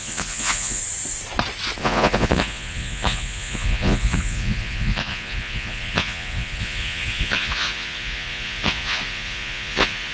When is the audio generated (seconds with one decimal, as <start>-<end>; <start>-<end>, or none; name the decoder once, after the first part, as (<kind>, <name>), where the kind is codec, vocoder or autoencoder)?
0.0-0.8 (vocoder, Vocos); 1.8-10.1